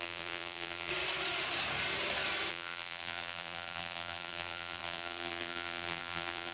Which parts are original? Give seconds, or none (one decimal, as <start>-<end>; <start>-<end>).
0.9-2.5